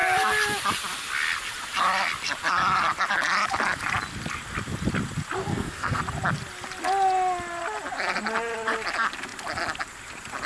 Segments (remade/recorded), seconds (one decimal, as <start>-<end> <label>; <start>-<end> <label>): 0.0-5.5 recorded; 5.5-6.0 remade; 6.0-10.5 recorded